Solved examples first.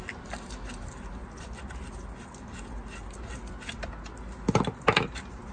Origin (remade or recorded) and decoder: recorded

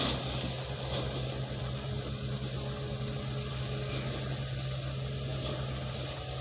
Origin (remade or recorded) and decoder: recorded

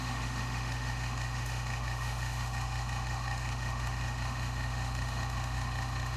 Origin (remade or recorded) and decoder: remade, autoencoder, DAC-VAE